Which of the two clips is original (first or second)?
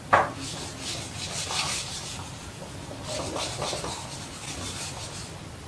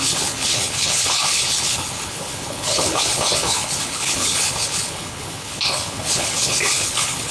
first